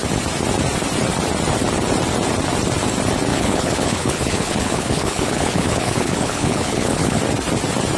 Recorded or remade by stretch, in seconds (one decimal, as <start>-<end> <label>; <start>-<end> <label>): 0.0-3.3 recorded; 3.3-7.2 remade; 7.2-8.0 recorded